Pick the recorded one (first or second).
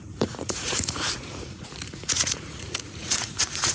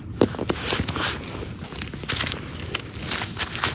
second